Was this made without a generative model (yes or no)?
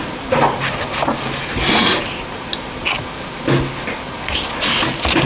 yes